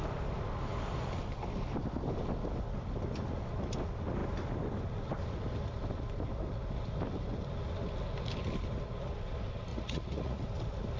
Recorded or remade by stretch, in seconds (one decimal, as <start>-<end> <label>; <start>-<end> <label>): 0.0-9.7 recorded; 9.7-10.4 remade; 10.4-11.0 recorded